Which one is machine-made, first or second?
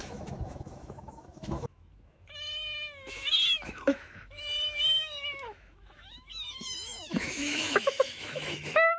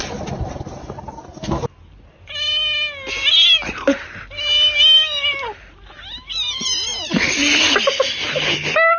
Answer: first